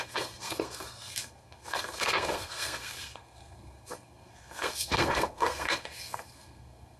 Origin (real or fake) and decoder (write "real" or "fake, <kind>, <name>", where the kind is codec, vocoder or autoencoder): fake, codec, SNAC